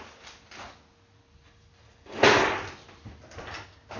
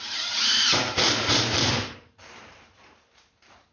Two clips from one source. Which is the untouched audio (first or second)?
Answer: first